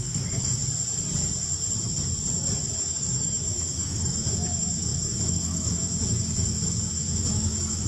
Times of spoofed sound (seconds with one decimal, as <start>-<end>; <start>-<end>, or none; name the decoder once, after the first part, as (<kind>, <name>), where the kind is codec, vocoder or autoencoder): 0.0-0.6 (autoencoder, DAC-VAE); 2.8-7.9